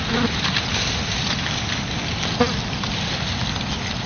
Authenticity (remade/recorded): recorded